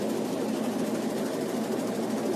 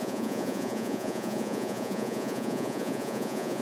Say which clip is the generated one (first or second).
second